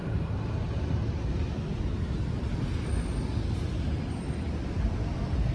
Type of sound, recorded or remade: recorded